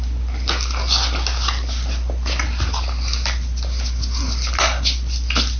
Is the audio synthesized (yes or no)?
no